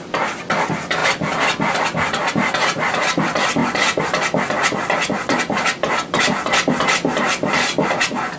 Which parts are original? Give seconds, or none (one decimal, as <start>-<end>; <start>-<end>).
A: 0.0-8.4